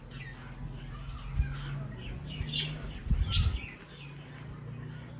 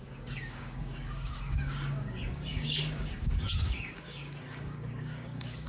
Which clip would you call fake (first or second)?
second